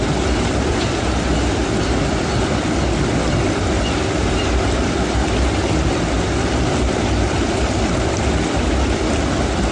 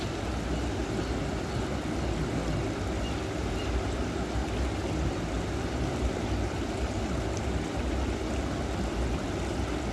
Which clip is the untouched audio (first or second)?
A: second